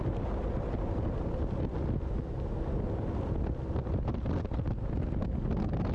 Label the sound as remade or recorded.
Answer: recorded